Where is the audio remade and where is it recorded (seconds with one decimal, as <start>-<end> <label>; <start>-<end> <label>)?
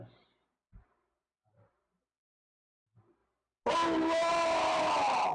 0.0-5.3 recorded